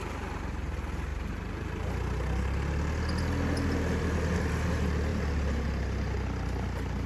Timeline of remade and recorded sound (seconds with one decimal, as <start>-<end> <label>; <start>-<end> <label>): 0.0-1.1 recorded; 1.1-1.9 remade; 1.9-5.1 recorded; 5.1-7.1 remade